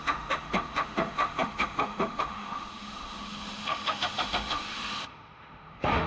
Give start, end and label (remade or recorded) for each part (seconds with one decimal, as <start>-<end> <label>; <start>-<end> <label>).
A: 0.0-6.1 remade